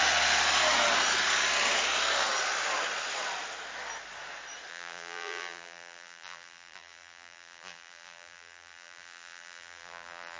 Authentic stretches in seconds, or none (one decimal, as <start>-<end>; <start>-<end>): 0.0-4.7